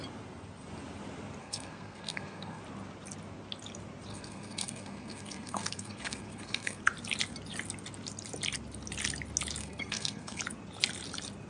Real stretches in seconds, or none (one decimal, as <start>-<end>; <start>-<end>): 0.0-1.4; 2.6-4.1; 6.8-9.6; 10.4-11.5